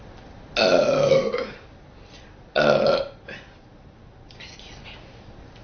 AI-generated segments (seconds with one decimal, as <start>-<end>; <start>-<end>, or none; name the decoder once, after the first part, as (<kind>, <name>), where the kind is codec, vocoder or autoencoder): none